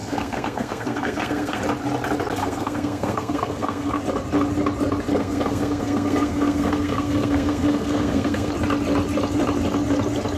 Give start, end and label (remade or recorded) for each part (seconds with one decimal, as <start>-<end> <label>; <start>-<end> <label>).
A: 0.0-1.6 remade; 1.6-2.4 recorded; 2.4-4.0 remade; 4.0-5.1 recorded; 5.1-8.5 remade; 8.5-10.4 recorded